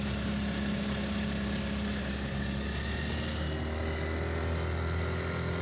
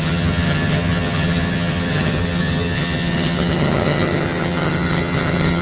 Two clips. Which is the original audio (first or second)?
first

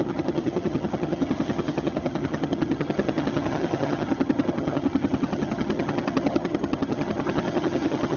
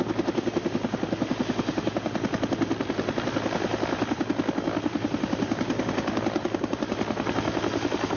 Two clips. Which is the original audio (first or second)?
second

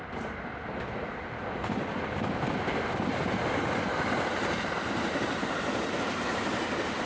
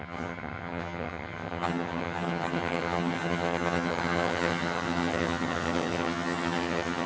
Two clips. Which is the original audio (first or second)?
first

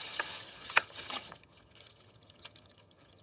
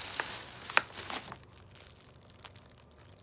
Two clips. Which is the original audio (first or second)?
second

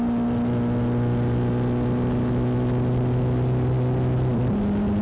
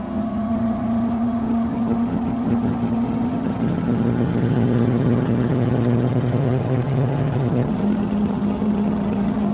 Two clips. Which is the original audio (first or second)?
first